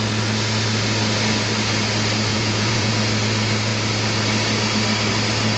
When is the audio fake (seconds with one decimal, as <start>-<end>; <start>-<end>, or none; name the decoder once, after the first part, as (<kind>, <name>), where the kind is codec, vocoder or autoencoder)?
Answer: 2.3-2.9 (vocoder, Vocos)